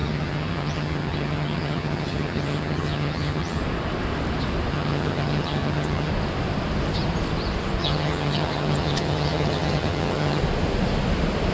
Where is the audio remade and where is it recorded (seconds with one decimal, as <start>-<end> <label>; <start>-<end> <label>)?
0.0-3.6 remade; 3.6-4.7 recorded; 4.7-6.1 remade; 6.1-7.8 recorded; 7.8-10.4 remade; 10.4-11.5 recorded